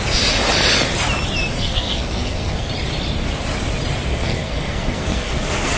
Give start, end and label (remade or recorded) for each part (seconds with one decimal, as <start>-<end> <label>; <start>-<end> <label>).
0.0-1.6 recorded; 1.6-2.7 remade; 2.7-4.1 recorded; 4.1-5.8 remade